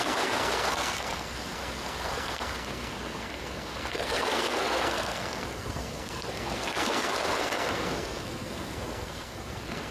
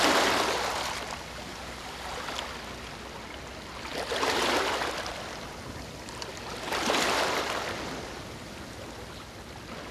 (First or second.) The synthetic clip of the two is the first